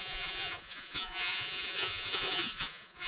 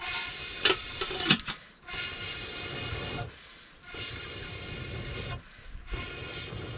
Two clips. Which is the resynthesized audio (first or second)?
first